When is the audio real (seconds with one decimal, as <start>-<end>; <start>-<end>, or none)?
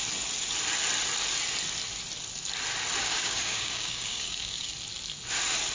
0.0-3.0; 4.7-5.7